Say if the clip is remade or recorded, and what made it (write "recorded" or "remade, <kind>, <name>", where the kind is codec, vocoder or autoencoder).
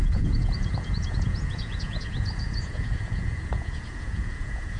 remade, vocoder, Vocos